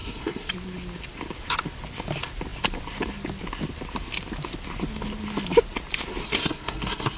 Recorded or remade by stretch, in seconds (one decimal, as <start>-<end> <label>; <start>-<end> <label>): 0.0-0.5 remade; 0.5-6.2 recorded; 6.2-7.2 remade